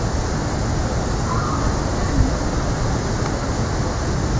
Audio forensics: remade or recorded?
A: recorded